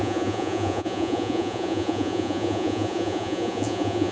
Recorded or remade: remade